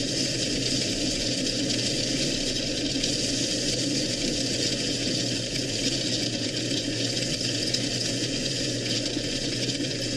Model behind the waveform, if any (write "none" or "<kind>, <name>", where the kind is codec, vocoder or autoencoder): vocoder, Vocos